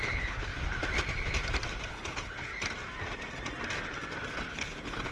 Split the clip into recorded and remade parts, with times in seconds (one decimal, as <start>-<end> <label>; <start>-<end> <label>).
0.0-0.5 remade; 0.5-1.9 recorded; 1.9-2.5 remade; 2.5-4.5 recorded; 4.5-5.1 remade